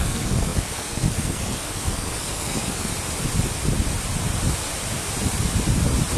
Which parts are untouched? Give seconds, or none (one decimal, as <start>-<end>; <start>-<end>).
2.9-6.2